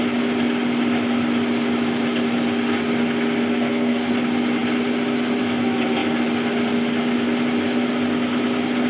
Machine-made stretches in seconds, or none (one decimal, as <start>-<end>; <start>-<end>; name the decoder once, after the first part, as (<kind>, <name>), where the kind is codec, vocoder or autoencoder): 3.5-4.1 (codec, SNAC)